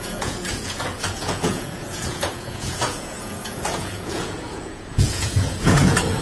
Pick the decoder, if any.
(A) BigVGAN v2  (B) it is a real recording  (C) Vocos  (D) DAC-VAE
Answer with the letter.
C